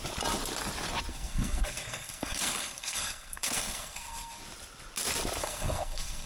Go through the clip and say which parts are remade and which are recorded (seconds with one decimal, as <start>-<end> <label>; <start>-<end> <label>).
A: 0.0-1.1 recorded; 1.1-4.4 remade; 4.4-5.4 recorded; 5.4-6.3 remade